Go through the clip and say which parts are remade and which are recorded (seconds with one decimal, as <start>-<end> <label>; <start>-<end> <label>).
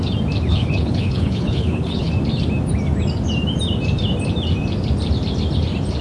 0.0-0.5 recorded; 0.5-2.1 remade; 2.1-6.0 recorded